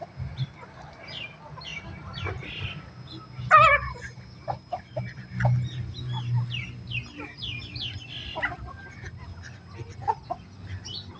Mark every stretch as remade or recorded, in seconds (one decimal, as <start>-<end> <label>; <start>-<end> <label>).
0.0-1.7 recorded; 1.7-2.2 remade; 2.2-11.2 recorded